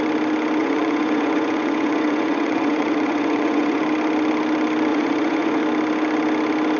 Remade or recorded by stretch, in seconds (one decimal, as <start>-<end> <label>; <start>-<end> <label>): 0.0-0.6 recorded; 0.6-3.8 remade; 3.8-4.9 recorded; 4.9-5.6 remade; 5.6-6.8 recorded